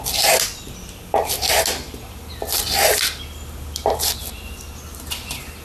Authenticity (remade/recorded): recorded